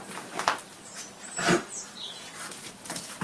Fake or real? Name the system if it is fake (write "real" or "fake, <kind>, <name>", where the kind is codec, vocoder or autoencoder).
fake, vocoder, BigVGAN v2